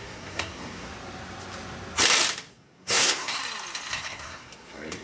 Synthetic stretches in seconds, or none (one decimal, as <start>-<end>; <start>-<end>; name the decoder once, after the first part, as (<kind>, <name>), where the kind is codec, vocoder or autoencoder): 0.0-0.9 (codec, SNAC); 2.5-3.4; 3.9-5.0